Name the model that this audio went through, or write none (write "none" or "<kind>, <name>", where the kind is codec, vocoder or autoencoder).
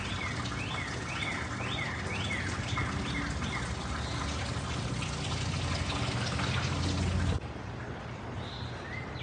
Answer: none